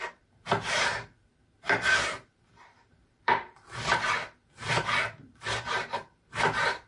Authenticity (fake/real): fake